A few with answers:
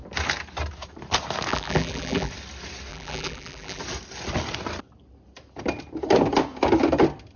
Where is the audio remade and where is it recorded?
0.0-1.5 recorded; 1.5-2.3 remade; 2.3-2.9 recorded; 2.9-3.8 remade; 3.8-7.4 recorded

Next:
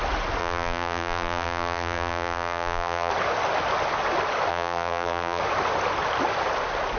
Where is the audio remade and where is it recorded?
0.0-0.4 recorded; 0.4-3.1 remade; 3.1-4.5 recorded; 4.5-5.4 remade; 5.4-7.0 recorded

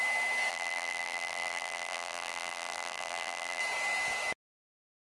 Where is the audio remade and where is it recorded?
0.0-0.5 recorded; 0.5-3.6 remade; 3.6-5.2 recorded

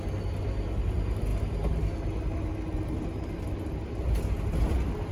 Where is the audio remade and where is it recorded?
0.0-5.1 recorded

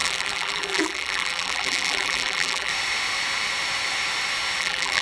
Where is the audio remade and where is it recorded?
0.0-2.7 remade; 2.7-4.6 recorded; 4.6-5.0 remade

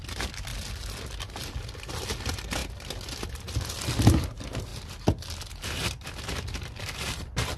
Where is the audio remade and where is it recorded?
0.0-0.5 remade; 0.5-1.4 recorded; 1.4-2.6 remade; 2.6-3.3 recorded; 3.3-4.7 remade; 4.7-6.9 recorded; 6.9-7.6 remade

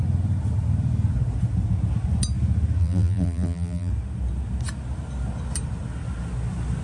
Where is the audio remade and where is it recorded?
0.0-2.8 recorded; 2.8-3.9 remade; 3.9-6.8 recorded